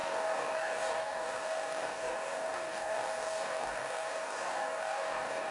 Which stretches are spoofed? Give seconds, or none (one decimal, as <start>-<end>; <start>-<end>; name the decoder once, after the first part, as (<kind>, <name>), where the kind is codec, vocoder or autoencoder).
0.0-5.5 (codec, DAC)